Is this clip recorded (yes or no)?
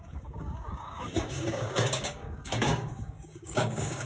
no